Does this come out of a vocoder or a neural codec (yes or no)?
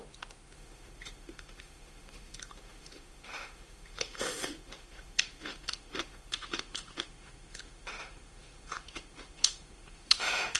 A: yes